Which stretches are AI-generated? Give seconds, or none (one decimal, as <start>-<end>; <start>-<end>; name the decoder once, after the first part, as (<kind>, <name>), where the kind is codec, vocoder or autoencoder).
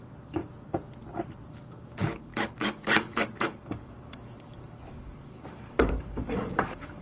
0.0-0.4 (codec, DAC); 1.5-7.0